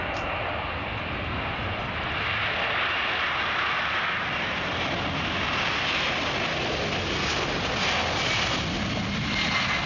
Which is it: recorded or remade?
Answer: recorded